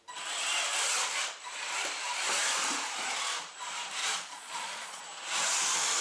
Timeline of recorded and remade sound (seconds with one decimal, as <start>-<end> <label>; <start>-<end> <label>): 0.0-4.0 recorded; 4.0-5.0 remade; 5.0-6.0 recorded